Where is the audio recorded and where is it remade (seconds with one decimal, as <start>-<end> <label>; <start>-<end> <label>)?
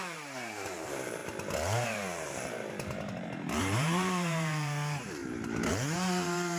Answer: 0.0-6.6 remade